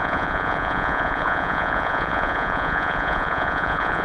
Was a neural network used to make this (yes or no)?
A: yes